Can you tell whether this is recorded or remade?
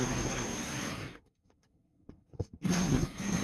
remade